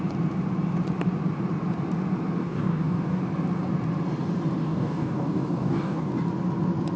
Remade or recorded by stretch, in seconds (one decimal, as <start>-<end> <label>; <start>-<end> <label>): 0.0-2.4 recorded; 2.4-3.2 remade; 3.2-4.6 recorded; 4.6-6.1 remade; 6.1-7.0 recorded